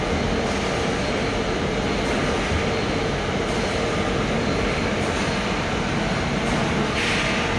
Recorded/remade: recorded